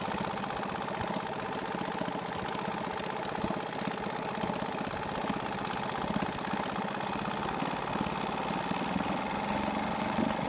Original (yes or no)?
yes